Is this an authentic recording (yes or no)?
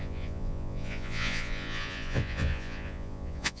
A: no